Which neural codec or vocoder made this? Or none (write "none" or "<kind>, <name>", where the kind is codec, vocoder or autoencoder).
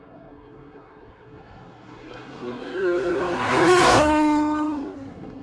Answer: codec, SNAC